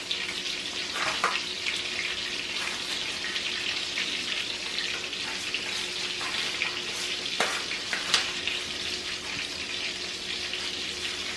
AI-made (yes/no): no